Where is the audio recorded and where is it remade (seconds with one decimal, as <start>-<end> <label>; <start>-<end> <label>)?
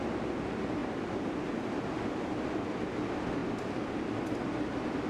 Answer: 0.0-5.1 recorded